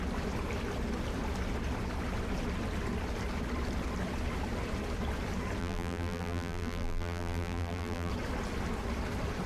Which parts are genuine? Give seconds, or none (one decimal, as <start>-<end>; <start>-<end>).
0.0-5.6; 8.1-9.5